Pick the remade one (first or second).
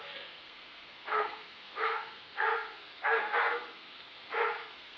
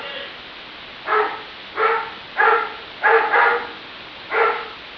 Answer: first